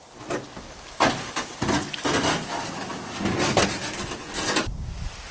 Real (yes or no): yes